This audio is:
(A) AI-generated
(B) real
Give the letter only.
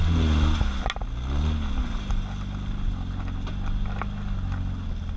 B